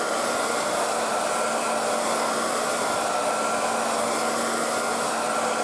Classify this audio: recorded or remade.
recorded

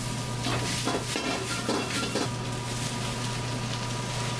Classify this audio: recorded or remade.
recorded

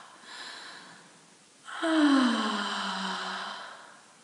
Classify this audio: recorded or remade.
recorded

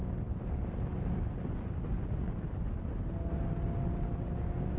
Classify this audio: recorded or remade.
recorded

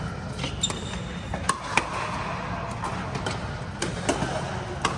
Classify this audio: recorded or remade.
recorded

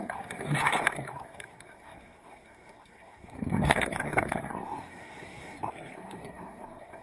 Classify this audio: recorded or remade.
remade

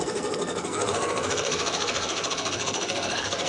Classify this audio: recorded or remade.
remade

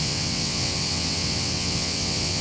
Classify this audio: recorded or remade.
remade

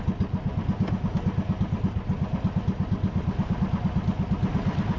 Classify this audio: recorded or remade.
recorded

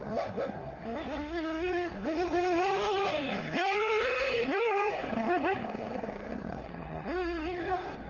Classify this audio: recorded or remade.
remade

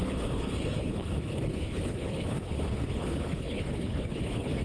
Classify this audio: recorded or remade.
remade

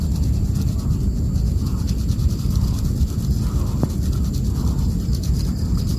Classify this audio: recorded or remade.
recorded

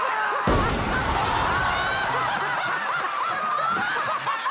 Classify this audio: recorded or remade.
recorded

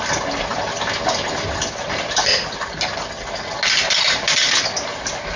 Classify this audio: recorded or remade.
recorded